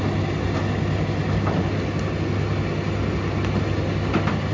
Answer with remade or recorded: recorded